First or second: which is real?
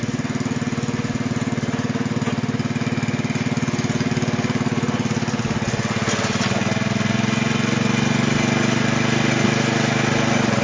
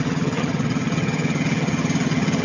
first